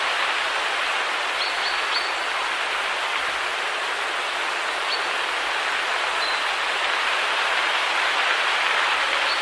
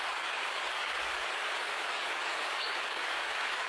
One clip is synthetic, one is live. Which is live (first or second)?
first